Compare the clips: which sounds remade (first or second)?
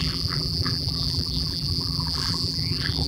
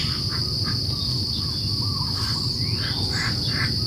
first